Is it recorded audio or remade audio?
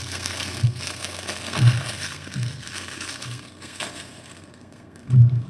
remade